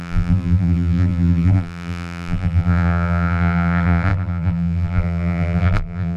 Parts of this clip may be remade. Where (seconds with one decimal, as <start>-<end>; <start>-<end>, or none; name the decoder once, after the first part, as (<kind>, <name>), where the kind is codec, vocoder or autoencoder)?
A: 0.0-6.2 (vocoder, BigVGAN v2)